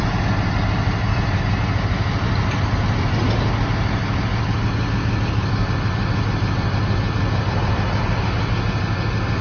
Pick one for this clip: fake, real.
real